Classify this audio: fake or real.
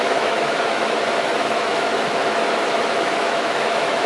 fake